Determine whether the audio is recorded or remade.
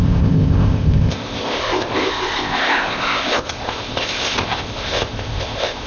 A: remade